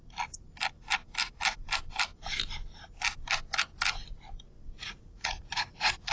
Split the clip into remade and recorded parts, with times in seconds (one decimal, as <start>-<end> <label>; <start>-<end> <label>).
0.0-4.8 recorded; 4.8-6.1 remade